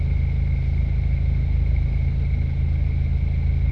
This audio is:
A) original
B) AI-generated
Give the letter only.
A